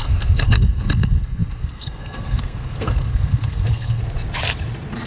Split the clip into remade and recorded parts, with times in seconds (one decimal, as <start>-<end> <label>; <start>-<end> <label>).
0.0-4.0 remade; 4.0-5.1 recorded